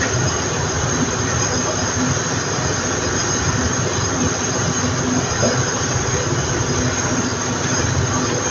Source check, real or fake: fake